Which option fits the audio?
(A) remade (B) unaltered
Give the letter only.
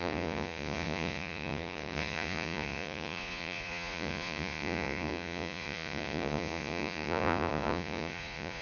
A